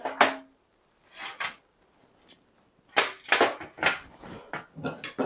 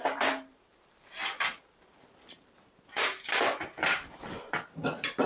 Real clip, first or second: first